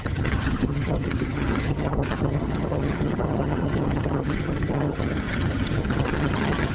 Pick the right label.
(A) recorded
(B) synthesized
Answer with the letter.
B